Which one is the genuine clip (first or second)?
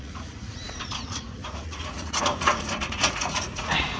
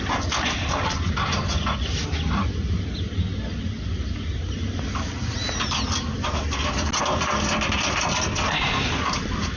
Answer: second